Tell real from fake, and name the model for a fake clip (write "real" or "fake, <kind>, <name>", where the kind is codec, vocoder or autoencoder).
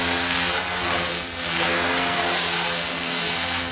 fake, codec, SNAC